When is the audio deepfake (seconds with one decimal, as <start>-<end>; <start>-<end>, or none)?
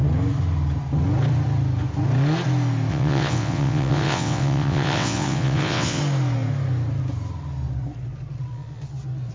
2.9-6.0